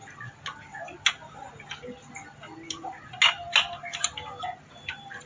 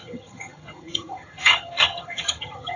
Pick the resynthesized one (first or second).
second